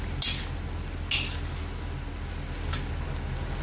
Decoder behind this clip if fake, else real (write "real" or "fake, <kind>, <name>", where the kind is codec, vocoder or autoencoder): real